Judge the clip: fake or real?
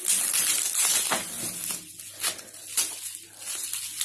real